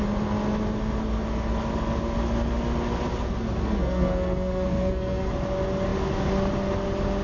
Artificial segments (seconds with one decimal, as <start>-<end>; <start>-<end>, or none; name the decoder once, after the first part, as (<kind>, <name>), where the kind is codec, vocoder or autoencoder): 3.6-5.3 (codec, SNAC)